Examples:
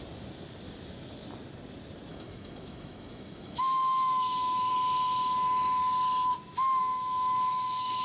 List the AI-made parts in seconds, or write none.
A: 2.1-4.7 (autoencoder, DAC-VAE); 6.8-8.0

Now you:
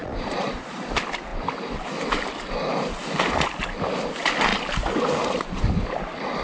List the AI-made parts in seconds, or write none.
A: 0.0-0.9 (vocoder, Vocos)

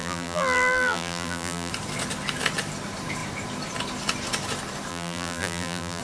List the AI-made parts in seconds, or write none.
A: 0.0-1.7 (vocoder, BigVGAN v2); 4.9-6.0